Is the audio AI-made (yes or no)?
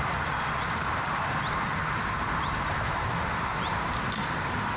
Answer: no